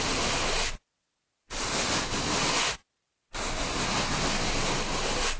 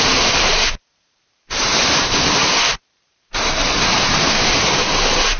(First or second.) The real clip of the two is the first